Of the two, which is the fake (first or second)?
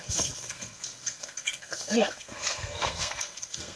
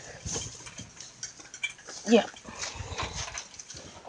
first